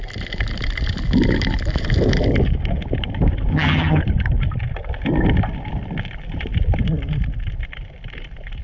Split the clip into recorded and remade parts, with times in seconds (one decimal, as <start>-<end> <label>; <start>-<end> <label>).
0.0-3.5 recorded; 3.5-4.0 remade; 4.0-8.6 recorded